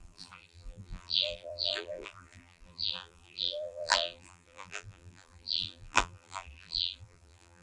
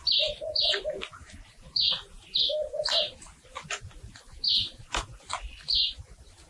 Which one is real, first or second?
second